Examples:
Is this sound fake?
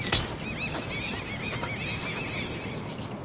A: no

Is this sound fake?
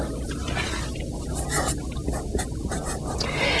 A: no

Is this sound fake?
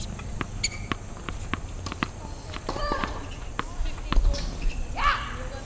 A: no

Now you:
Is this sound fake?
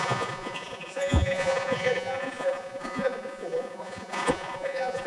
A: yes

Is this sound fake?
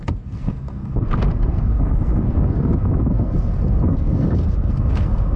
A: yes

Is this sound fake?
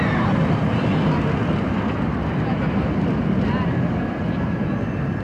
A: no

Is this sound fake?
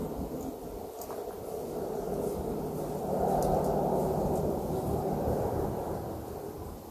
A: no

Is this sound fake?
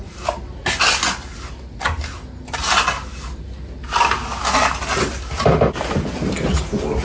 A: no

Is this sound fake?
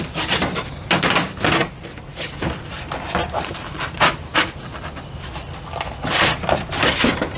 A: yes